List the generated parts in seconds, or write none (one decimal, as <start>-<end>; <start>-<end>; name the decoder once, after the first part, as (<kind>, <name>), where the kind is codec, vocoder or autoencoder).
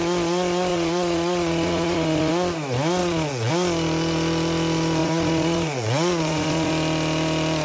0.7-2.3 (vocoder, Vocos); 3.0-3.5; 5.0-6.7